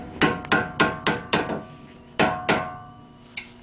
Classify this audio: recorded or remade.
recorded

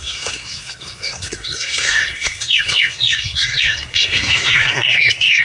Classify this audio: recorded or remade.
remade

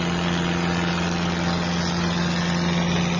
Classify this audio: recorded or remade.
recorded